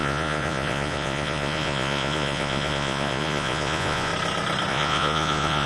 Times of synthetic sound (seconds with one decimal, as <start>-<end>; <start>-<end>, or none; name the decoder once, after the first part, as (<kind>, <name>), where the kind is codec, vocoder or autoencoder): 0.0-4.1 (vocoder, Vocos); 4.7-5.7